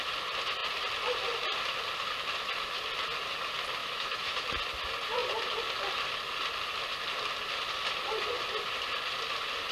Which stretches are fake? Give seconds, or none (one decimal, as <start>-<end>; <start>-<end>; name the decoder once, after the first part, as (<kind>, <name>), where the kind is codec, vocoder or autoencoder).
3.8-4.4 (autoencoder, DAC-VAE)

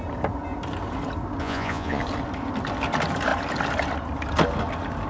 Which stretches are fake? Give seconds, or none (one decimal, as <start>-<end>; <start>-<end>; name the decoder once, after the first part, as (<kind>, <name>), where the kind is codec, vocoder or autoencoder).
1.4-2.0 (vocoder, Vocos)

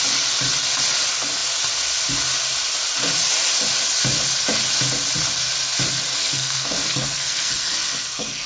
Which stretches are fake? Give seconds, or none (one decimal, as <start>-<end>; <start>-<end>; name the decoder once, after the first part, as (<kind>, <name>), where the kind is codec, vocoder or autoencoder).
6.2-8.5 (codec, SNAC)